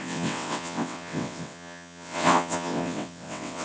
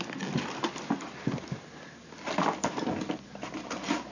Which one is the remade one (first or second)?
first